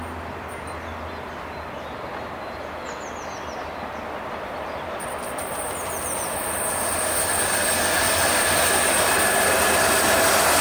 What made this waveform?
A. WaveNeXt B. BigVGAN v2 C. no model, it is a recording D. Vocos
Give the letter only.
C